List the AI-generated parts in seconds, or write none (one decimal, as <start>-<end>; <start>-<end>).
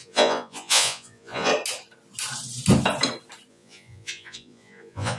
0.0-1.5; 3.5-5.2